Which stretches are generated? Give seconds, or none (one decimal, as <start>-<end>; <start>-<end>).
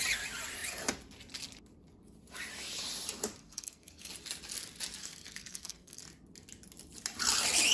3.4-4.1; 5.0-6.0